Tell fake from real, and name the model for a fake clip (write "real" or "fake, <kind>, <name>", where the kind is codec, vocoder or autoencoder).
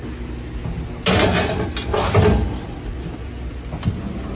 real